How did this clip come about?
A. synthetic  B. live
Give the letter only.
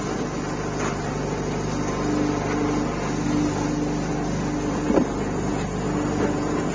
B